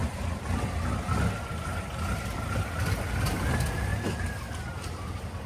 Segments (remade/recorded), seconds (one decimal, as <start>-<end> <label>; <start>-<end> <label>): 0.0-5.5 recorded